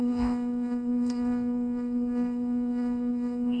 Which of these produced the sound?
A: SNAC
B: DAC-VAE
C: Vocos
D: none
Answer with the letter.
A